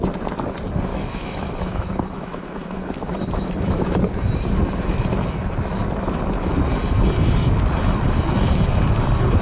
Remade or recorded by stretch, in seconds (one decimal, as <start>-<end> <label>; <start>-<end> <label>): 0.0-0.9 recorded; 0.9-4.0 remade; 4.0-9.4 recorded